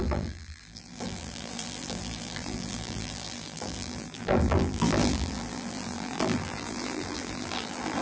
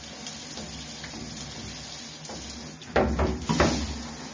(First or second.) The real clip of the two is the second